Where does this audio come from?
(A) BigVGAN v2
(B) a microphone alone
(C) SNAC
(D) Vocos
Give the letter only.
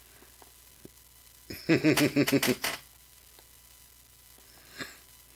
B